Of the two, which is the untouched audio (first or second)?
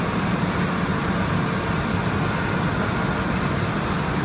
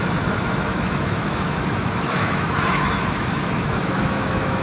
first